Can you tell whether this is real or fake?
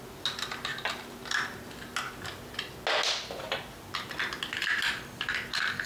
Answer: real